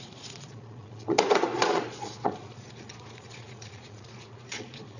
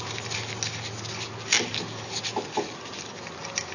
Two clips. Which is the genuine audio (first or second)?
second